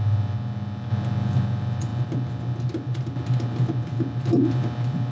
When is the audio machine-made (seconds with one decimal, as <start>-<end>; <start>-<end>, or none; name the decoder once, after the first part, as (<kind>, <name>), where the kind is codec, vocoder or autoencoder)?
none